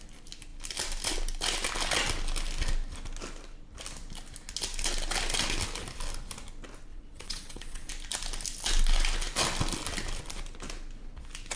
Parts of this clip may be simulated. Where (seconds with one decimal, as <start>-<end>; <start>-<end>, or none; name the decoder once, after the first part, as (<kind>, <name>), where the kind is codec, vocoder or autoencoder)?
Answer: 6.9-7.9 (vocoder, WaveNeXt)